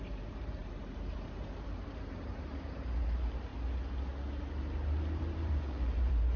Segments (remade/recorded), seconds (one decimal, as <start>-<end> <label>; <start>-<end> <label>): 0.0-3.5 remade; 3.5-5.0 recorded; 5.0-6.4 remade